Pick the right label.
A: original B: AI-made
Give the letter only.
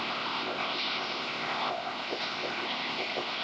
B